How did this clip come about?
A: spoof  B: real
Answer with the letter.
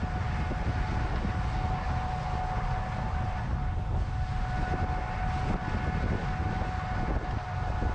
B